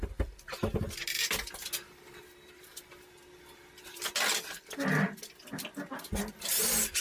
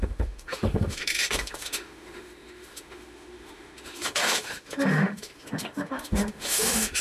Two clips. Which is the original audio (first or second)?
first